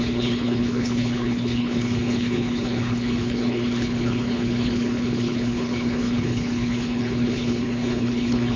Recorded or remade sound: remade